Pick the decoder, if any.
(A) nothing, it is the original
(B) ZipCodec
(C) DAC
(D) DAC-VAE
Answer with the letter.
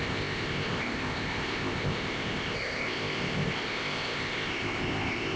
B